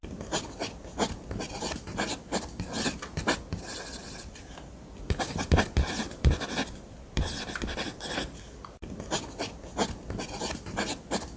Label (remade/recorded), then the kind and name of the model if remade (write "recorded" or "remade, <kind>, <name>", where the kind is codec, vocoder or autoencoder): recorded